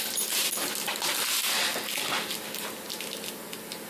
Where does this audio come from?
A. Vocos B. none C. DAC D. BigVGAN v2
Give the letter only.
B